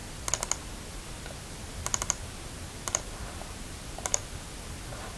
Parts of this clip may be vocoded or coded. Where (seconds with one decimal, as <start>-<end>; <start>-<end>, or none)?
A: none